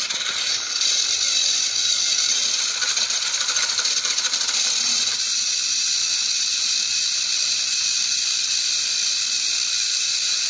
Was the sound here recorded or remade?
remade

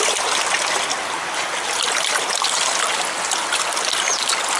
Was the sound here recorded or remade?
recorded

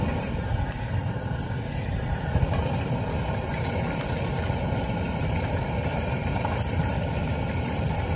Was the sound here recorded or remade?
remade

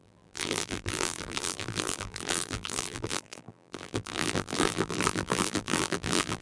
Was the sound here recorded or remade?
remade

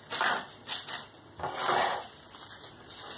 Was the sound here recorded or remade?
recorded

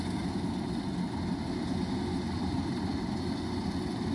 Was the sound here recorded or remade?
recorded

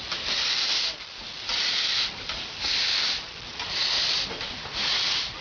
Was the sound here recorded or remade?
remade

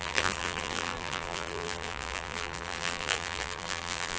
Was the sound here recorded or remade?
remade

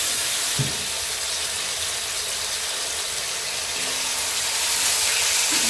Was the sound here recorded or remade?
recorded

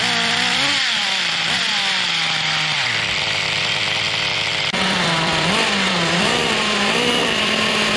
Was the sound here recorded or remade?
remade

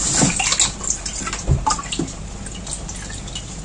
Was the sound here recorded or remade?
recorded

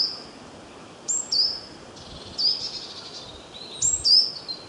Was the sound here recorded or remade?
recorded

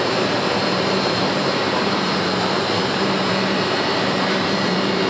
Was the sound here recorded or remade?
remade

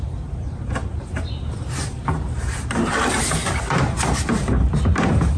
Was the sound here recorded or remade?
remade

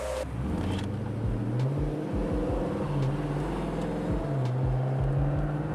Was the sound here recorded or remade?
recorded